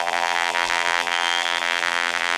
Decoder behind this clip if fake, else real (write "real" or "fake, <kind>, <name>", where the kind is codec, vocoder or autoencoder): fake, vocoder, BigVGAN v2